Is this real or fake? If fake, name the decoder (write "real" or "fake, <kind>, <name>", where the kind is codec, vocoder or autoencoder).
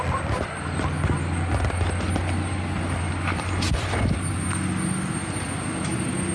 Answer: real